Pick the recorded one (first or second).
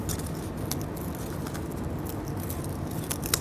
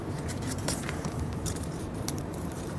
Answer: first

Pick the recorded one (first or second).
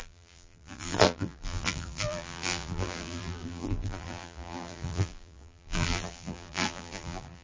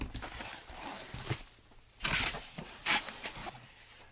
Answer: second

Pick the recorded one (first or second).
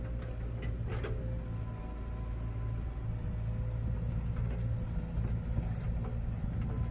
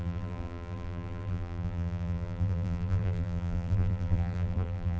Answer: first